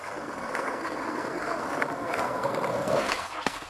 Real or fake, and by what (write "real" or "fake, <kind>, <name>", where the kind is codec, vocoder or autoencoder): fake, codec, SNAC